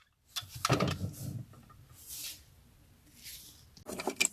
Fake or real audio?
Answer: real